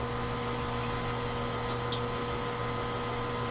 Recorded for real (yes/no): yes